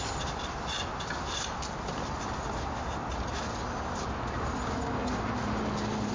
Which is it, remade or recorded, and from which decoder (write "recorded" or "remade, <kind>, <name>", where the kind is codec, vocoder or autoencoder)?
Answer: recorded